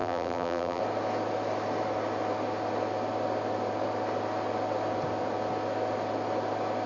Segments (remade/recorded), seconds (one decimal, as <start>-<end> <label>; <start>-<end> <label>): 0.0-0.8 remade; 0.8-6.9 recorded